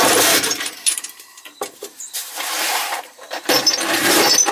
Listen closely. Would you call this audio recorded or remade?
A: remade